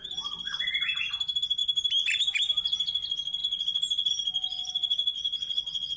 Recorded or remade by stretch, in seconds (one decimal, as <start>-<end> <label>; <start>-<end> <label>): 0.0-4.5 recorded; 4.5-6.0 remade